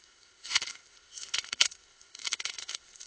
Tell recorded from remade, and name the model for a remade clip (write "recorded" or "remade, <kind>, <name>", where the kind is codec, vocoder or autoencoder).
remade, codec, ZipCodec